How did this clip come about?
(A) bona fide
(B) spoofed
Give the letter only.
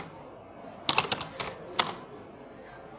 A